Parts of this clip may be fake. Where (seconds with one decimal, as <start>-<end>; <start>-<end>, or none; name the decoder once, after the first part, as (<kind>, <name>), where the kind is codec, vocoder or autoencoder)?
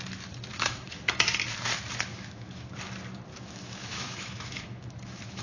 0.5-1.1 (autoencoder, DAC-VAE); 2.1-2.7; 3.3-5.4